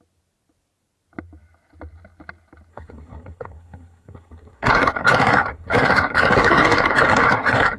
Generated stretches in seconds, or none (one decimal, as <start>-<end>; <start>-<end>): 2.7-7.8